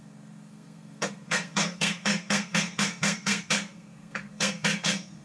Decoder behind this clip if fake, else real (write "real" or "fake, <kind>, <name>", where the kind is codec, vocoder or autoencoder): fake, codec, SNAC